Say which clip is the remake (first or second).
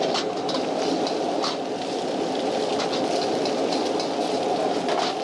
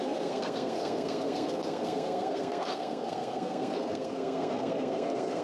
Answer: second